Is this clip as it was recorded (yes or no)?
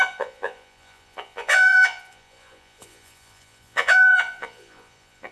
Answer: no